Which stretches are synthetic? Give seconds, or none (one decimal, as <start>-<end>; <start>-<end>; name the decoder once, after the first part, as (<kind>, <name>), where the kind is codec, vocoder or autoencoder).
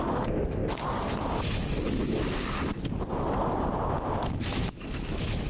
0.0-0.6 (autoencoder, DAC-VAE); 3.9-5.5